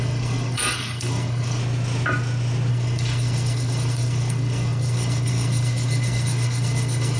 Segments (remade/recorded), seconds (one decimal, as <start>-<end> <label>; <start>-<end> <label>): 0.0-1.6 remade; 1.6-2.7 recorded; 2.7-7.2 remade